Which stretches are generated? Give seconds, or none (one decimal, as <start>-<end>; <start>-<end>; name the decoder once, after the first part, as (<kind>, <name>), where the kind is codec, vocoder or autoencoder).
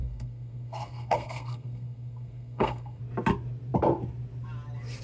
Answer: 0.0-3.0 (codec, SNAC)